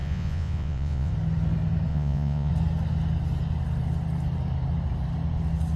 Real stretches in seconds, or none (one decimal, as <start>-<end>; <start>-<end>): 1.1-1.9; 2.5-5.8